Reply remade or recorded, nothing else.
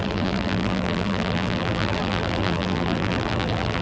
remade